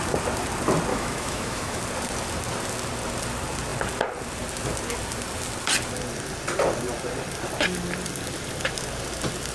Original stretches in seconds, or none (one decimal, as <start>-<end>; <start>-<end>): 0.0-0.9; 1.8-9.5